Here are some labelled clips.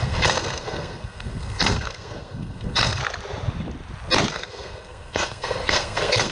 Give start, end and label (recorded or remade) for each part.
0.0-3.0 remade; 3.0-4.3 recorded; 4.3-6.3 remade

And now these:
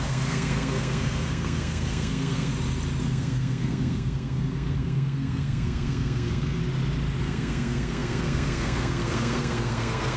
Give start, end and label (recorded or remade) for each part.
0.0-2.5 remade; 2.5-3.0 recorded; 3.0-6.6 remade; 6.6-7.2 recorded; 7.2-10.2 remade

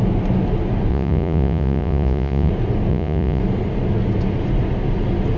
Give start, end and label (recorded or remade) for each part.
0.0-0.9 recorded; 0.9-2.5 remade; 2.5-2.9 recorded; 2.9-3.4 remade; 3.4-5.4 recorded

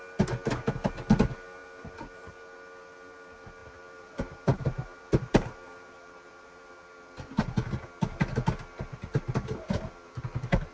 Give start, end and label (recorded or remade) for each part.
0.0-1.6 recorded; 1.6-2.3 remade; 2.3-3.6 recorded; 3.6-7.4 remade; 7.4-8.9 recorded; 8.9-10.2 remade; 10.2-10.7 recorded

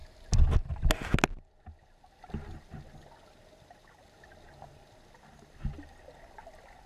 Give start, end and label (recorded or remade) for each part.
0.0-6.9 recorded

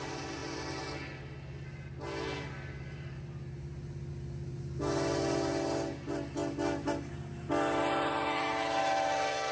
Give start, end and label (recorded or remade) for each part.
0.0-9.5 recorded